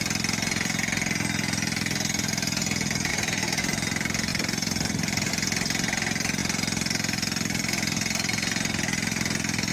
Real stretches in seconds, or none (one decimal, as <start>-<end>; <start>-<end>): 0.0-3.1; 3.6-4.3; 5.3-9.7